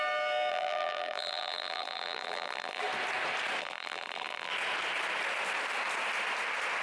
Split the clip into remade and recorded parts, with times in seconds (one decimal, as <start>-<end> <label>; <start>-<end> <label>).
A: 0.0-0.5 recorded; 0.5-2.8 remade; 2.8-3.6 recorded; 3.6-4.5 remade; 4.5-6.8 recorded